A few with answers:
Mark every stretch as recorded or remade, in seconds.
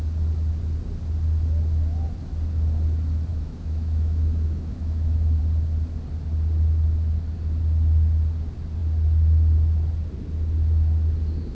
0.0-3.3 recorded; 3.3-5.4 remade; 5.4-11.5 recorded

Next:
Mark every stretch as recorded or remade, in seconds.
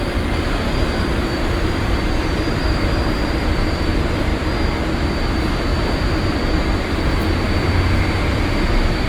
0.0-4.3 remade; 4.3-5.3 recorded; 5.3-5.7 remade; 5.7-6.3 recorded; 6.3-7.2 remade; 7.2-8.2 recorded; 8.2-9.1 remade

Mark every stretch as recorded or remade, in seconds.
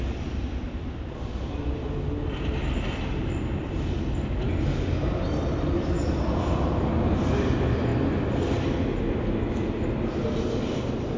0.0-11.2 recorded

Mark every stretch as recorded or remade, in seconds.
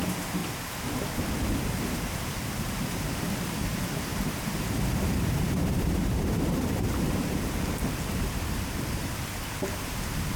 0.0-0.4 remade; 0.4-1.8 recorded; 1.8-10.4 remade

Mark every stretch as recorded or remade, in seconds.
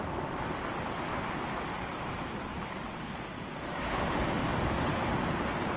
0.0-1.1 remade; 1.1-3.9 recorded; 3.9-5.8 remade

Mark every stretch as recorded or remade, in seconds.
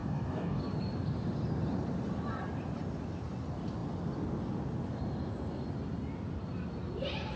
0.0-0.6 remade; 0.6-7.4 recorded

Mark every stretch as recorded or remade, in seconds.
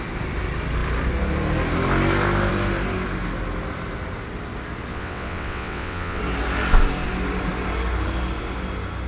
0.0-4.9 recorded; 4.9-6.2 remade; 6.2-9.1 recorded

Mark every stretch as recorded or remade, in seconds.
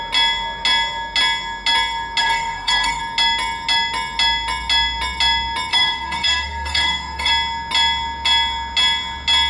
0.0-2.2 recorded; 2.2-3.0 remade; 3.0-5.7 recorded; 5.7-7.3 remade; 7.3-9.5 recorded